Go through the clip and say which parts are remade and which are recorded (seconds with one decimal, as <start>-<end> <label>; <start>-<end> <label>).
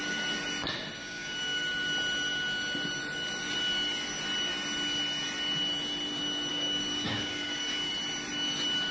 0.0-1.0 recorded; 1.0-1.6 remade; 1.6-6.5 recorded; 6.5-7.9 remade; 7.9-8.9 recorded